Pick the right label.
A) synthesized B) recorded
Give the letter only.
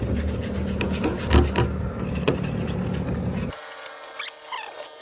B